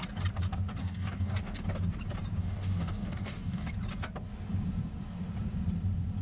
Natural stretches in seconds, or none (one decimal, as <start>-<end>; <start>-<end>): 0.0-0.8; 1.6-2.4; 3.7-6.2